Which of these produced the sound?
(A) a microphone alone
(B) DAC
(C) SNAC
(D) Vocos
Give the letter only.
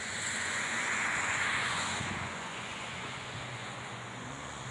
D